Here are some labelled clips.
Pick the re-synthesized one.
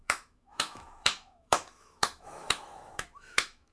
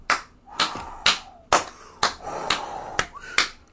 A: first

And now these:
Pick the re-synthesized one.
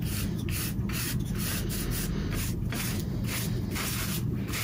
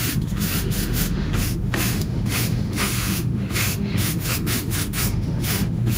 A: second